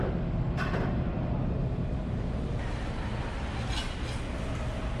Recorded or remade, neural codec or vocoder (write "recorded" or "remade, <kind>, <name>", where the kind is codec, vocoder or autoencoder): recorded